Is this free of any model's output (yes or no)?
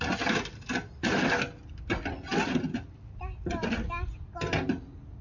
yes